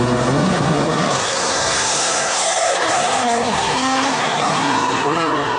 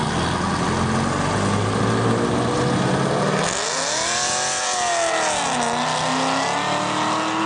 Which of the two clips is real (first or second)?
second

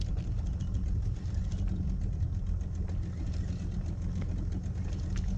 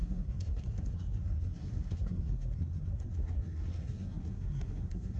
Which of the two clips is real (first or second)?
first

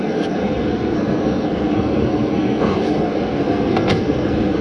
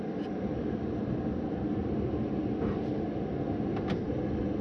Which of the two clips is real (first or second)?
second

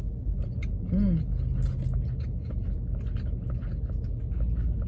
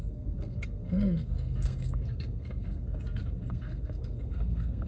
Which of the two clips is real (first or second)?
first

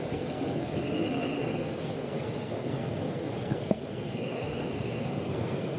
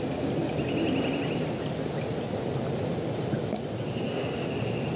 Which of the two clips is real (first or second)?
second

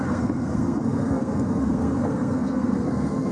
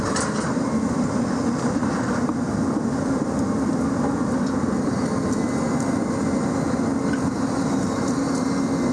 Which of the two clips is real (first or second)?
second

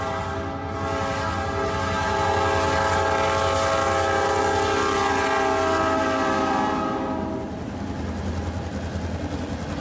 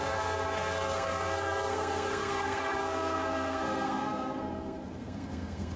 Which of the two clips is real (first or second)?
first